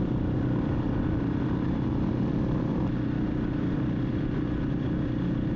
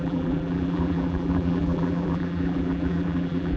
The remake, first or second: second